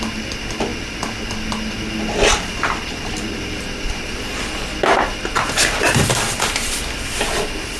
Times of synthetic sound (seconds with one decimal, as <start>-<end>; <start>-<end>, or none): 0.0-4.6; 6.9-7.8